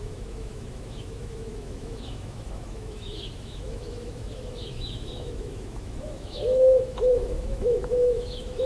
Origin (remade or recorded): remade